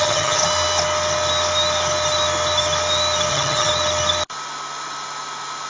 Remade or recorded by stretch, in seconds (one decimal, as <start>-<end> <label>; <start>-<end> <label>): 0.0-0.4 remade; 0.4-3.3 recorded; 3.3-3.7 remade; 3.7-5.7 recorded